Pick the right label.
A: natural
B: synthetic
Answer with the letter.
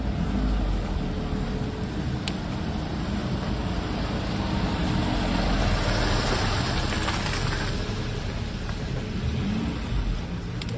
A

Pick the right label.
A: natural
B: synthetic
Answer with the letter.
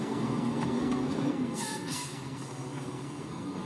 B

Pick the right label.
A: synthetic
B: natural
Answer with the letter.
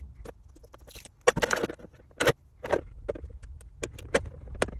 B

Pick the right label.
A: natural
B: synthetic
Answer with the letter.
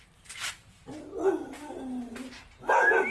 A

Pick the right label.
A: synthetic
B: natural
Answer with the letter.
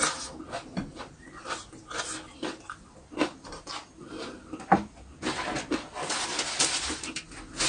B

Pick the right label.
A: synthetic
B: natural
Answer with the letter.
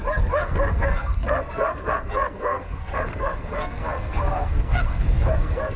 A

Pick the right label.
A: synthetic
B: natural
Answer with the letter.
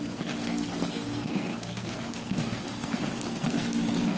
A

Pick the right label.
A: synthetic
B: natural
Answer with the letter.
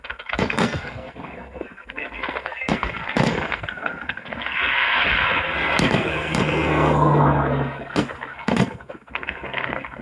A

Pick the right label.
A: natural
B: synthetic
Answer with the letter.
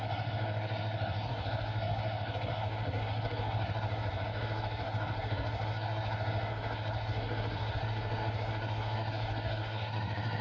B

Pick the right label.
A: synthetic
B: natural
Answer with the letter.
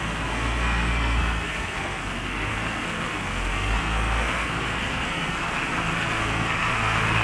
A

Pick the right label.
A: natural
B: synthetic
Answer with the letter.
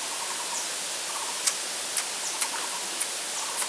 A